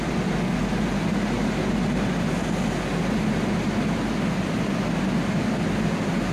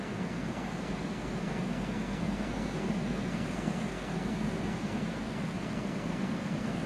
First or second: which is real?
first